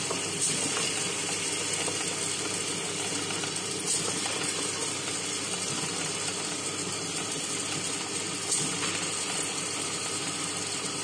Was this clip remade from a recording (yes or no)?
no